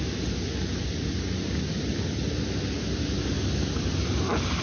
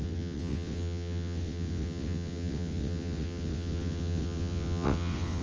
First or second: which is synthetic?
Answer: second